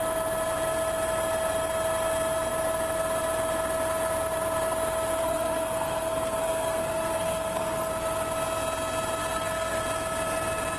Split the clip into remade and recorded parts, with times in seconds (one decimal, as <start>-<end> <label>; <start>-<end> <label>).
0.0-5.2 recorded; 5.2-7.9 remade; 7.9-9.2 recorded; 9.2-9.8 remade; 9.8-10.8 recorded